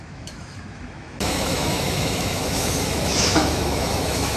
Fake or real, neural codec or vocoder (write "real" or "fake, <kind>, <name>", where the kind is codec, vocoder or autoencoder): fake, autoencoder, DAC-VAE